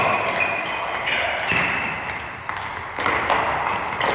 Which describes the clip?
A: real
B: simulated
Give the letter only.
A